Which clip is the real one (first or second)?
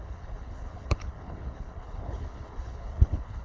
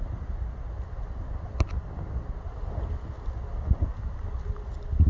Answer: second